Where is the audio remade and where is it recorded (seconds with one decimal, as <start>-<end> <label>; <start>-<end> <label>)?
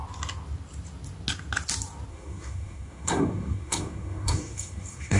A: 0.0-2.1 recorded; 2.1-5.2 remade